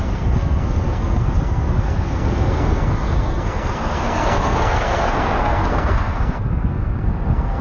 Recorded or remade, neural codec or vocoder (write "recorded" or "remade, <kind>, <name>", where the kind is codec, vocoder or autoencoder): remade, codec, SNAC